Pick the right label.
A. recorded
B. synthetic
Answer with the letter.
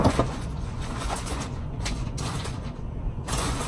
B